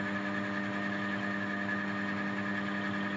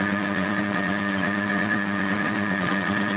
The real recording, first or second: first